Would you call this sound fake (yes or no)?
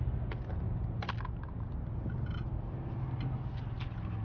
no